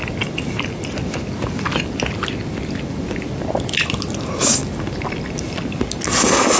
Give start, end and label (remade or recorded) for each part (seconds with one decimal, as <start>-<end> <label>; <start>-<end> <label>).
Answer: 0.0-6.6 recorded